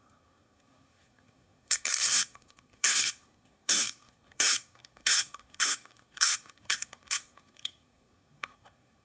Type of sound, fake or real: fake